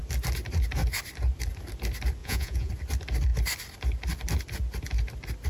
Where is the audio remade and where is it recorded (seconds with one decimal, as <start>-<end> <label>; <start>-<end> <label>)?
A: 0.0-2.2 recorded; 2.2-2.7 remade; 2.7-5.5 recorded